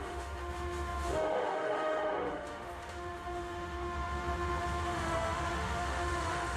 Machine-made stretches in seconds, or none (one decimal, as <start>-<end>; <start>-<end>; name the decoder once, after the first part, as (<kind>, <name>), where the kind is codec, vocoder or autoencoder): 0.0-6.6 (autoencoder, DAC-VAE)